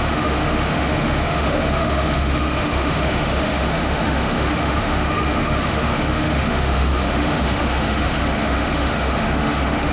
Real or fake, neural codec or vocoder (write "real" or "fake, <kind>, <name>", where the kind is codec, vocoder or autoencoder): fake, autoencoder, DAC-VAE